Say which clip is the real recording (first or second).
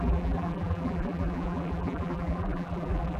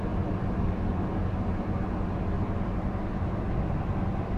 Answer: second